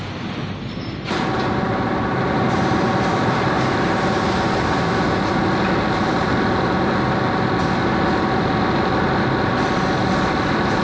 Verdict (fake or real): real